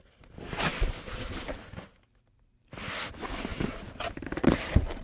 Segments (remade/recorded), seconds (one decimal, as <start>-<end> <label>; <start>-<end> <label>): 0.0-5.0 recorded